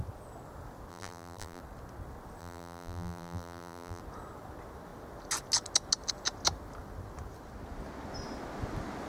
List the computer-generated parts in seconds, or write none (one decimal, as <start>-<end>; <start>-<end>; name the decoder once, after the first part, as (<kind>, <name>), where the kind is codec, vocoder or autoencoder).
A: 0.9-1.6 (vocoder, BigVGAN v2); 2.4-4.0